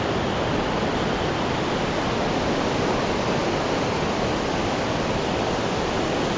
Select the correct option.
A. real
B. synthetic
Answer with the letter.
A